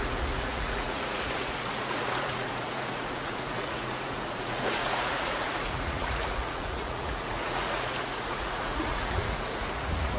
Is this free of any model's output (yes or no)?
no